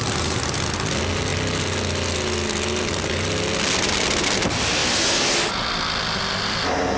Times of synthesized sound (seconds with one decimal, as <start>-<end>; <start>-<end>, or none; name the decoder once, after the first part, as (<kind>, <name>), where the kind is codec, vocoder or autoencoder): none